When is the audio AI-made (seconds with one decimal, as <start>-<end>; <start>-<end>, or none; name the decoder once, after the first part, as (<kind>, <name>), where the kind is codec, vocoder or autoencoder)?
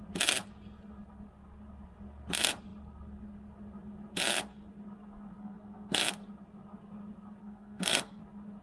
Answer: 5.4-6.0 (codec, SNAC); 7.4-8.2